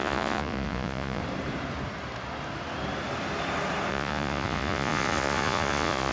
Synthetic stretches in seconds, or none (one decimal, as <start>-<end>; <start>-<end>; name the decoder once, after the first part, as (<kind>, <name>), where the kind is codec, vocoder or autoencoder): 0.0-1.2 (vocoder, Vocos); 3.9-6.1

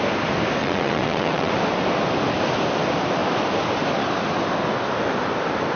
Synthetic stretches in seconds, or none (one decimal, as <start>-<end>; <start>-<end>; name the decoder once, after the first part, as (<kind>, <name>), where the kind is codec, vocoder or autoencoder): 0.6-1.5 (vocoder, WaveNeXt)